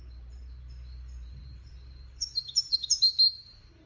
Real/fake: fake